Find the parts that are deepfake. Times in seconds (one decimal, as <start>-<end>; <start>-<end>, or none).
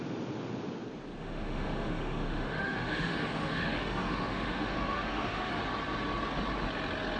1.2-5.5